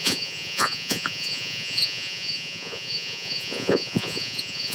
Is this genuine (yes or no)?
no